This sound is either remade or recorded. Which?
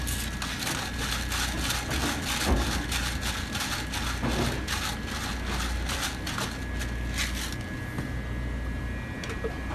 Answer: recorded